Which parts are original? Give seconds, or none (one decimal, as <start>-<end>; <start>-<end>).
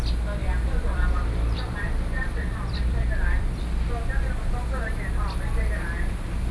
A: 0.0-0.4; 3.6-6.5